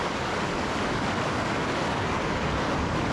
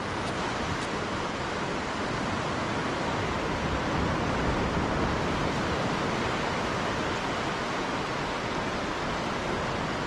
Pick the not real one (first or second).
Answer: first